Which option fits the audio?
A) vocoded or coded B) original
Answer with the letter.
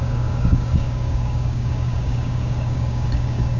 A